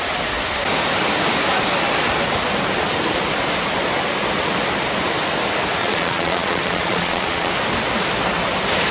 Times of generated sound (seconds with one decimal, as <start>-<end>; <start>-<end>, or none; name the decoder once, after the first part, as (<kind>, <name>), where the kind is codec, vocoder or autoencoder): 5.8-7.5 (vocoder, Vocos)